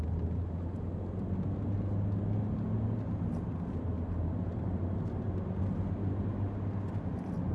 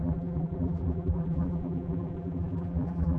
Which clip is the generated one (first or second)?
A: second